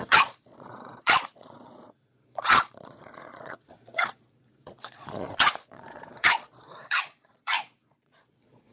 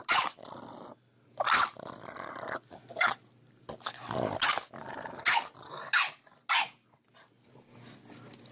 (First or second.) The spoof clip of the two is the first